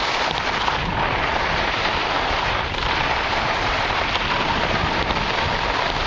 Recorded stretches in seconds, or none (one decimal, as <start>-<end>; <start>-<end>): 0.0-1.3; 5.0-6.1